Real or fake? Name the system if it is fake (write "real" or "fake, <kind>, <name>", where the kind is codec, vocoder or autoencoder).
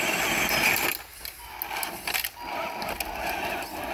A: real